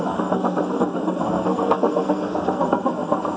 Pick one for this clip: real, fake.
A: fake